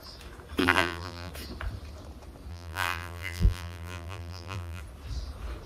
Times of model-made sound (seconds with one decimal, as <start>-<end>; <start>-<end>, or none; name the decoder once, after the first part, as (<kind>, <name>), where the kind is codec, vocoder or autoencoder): 0.6-1.3 (vocoder, BigVGAN v2); 2.5-4.8